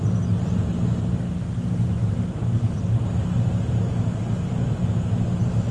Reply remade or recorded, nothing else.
recorded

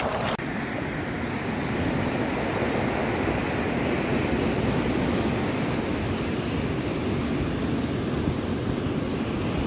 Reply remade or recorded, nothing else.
recorded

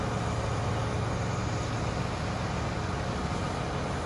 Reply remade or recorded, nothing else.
recorded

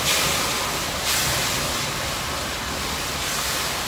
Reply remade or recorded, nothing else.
recorded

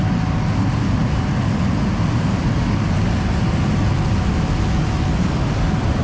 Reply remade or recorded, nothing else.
recorded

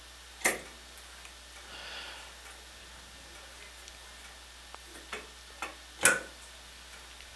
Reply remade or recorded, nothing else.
recorded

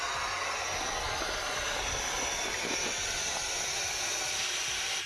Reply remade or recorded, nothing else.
recorded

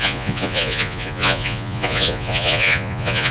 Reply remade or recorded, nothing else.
remade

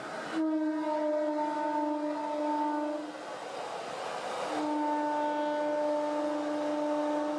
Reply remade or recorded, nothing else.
recorded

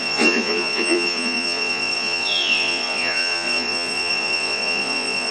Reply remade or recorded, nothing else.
remade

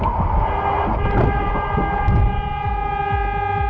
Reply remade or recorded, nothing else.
recorded